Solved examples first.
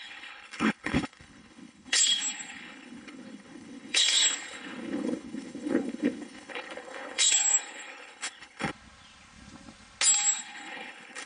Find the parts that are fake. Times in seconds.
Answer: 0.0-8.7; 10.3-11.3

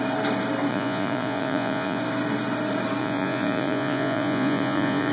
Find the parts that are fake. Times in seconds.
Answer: 0.7-2.0; 3.0-5.1

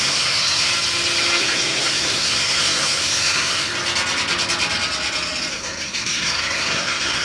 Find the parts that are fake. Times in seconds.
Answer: 0.0-0.7; 1.4-3.7; 5.5-7.2

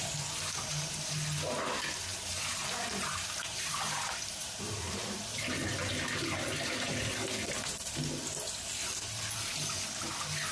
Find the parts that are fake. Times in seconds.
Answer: 2.1-5.2